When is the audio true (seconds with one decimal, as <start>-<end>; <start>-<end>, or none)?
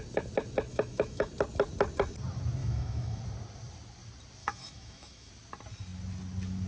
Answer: 0.0-0.7; 1.3-2.6; 3.2-4.4; 5.3-6.7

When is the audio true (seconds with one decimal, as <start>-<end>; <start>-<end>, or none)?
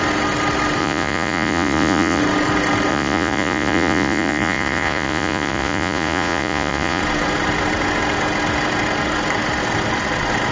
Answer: 0.0-0.8; 2.2-2.9; 7.0-10.5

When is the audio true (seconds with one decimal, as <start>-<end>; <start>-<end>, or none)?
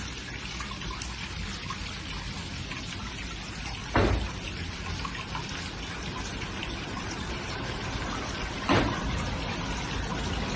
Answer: 0.0-6.3; 9.1-10.6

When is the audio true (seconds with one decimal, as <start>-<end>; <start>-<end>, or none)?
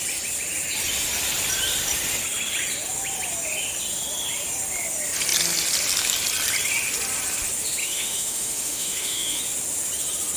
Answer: 0.0-7.8; 9.4-10.4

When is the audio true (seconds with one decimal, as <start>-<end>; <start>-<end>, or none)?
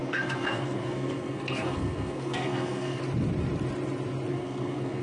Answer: 3.0-4.3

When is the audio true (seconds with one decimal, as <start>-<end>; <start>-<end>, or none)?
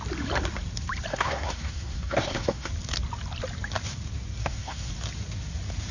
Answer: 0.0-1.1; 2.7-4.4; 4.9-5.9